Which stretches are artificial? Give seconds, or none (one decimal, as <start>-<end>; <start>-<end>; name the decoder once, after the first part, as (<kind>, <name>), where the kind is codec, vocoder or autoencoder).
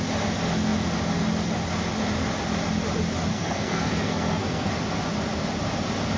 3.3-4.7 (codec, SNAC)